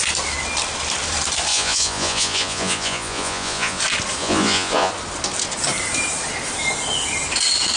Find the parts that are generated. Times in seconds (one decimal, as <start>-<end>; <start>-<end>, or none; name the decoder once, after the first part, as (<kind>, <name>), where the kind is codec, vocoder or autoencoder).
1.5-3.8 (vocoder, Vocos); 4.2-4.9